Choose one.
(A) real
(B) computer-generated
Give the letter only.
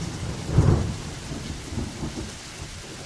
B